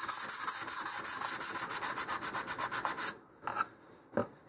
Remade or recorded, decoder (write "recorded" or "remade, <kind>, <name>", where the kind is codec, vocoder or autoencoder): recorded